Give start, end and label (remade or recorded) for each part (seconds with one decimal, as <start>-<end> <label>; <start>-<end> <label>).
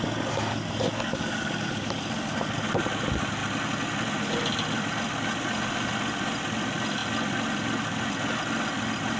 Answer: 0.0-0.5 recorded; 0.5-1.7 remade; 1.7-9.2 recorded